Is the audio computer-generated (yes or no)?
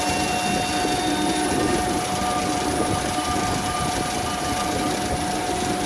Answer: no